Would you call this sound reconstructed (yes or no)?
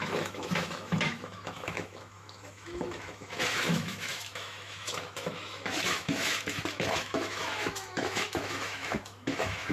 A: yes